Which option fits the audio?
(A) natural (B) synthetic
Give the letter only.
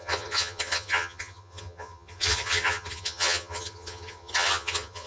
B